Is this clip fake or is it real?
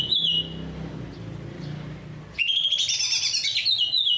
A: real